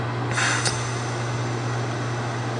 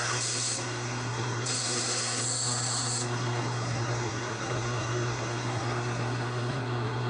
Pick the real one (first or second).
first